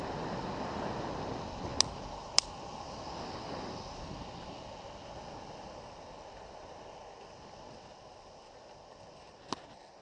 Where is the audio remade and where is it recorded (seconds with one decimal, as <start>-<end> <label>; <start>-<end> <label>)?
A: 0.0-10.0 recorded